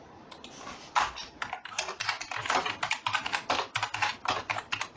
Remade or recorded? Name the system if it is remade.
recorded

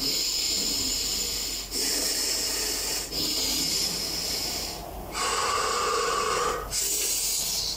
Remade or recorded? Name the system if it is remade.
recorded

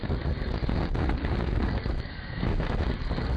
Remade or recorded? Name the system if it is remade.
remade, codec, SNAC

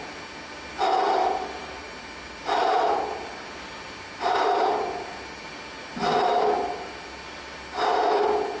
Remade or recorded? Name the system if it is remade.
recorded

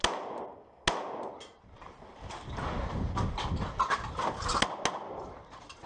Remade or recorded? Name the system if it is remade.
recorded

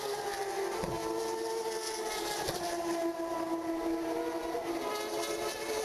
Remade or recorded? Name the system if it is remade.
recorded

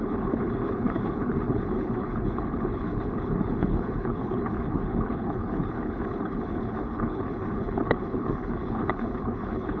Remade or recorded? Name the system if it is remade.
remade, codec, HILCodec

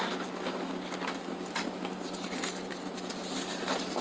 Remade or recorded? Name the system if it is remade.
recorded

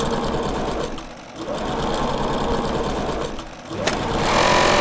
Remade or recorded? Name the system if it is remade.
recorded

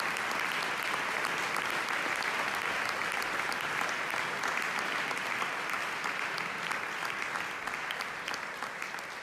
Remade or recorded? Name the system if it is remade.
recorded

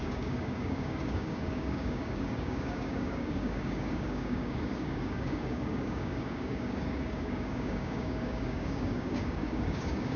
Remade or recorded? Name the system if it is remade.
remade, codec, DAC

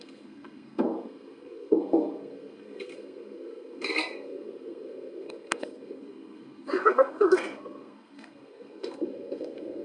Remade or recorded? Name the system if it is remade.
remade, codec, SNAC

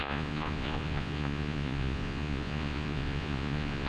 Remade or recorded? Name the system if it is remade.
remade, vocoder, Vocos